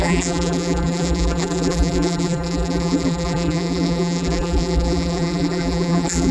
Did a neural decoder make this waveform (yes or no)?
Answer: yes